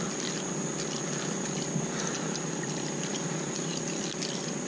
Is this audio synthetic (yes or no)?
no